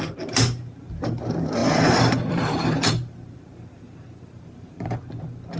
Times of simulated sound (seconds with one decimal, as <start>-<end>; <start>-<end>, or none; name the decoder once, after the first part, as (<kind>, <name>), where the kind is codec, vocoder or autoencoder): 1.6-5.0 (vocoder, BigVGAN v2)